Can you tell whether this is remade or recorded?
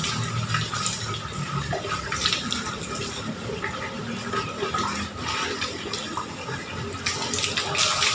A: recorded